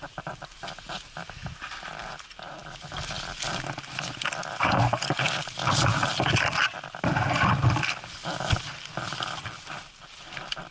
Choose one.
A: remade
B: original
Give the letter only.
B